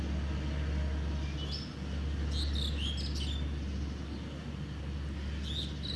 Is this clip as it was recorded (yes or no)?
yes